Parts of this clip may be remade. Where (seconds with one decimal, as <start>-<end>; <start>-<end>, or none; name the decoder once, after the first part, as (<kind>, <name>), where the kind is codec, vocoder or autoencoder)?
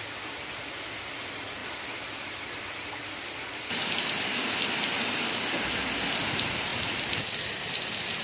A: 1.6-5.2 (vocoder, BigVGAN v2); 6.7-7.5